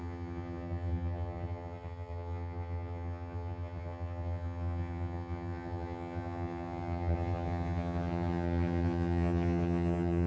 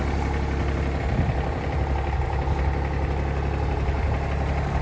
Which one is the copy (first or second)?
first